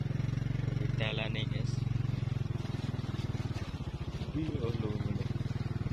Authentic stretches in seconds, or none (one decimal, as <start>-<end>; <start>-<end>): 0.0-1.1; 4.6-5.9